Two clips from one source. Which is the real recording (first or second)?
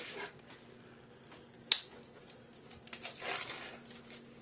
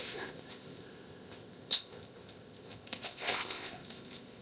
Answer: first